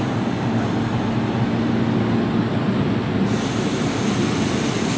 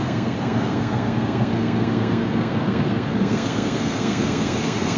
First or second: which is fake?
second